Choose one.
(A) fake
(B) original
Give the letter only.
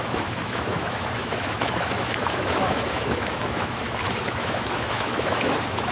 A